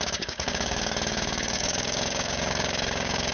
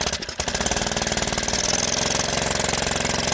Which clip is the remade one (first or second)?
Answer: first